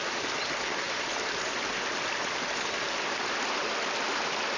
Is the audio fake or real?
real